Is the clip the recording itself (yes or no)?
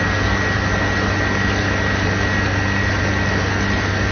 yes